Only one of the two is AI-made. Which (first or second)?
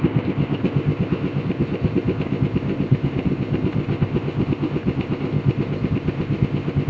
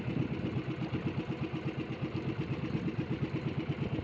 first